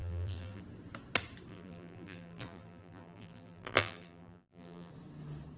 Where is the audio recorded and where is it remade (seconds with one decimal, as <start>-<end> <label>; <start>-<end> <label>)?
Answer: 0.0-0.6 remade; 0.6-1.5 recorded; 1.5-4.9 remade; 4.9-5.6 recorded